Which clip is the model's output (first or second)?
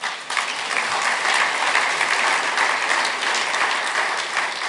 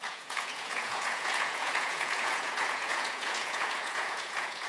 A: second